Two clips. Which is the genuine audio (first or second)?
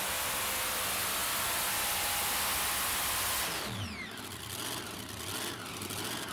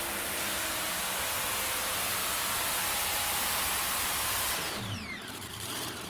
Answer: first